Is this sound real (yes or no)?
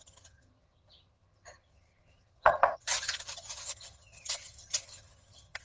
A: no